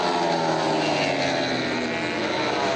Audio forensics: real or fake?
real